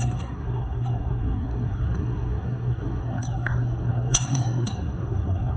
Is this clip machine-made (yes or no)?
yes